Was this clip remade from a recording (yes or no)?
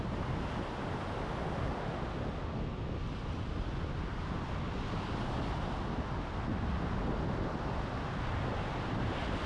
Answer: no